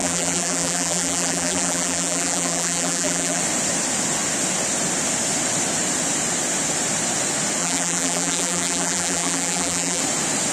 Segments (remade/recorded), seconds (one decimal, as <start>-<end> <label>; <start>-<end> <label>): 0.0-3.4 remade; 3.4-7.6 recorded; 7.6-10.0 remade; 10.0-10.5 recorded